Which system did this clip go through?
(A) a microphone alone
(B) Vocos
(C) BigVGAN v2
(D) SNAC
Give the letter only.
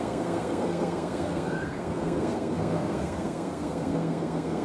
D